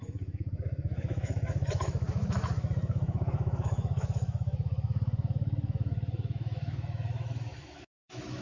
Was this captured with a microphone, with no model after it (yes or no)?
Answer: no